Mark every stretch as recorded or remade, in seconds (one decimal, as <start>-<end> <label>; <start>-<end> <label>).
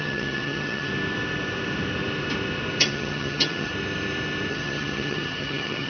0.0-0.9 remade; 0.9-2.8 recorded; 2.8-3.7 remade; 3.7-4.5 recorded; 4.5-5.9 remade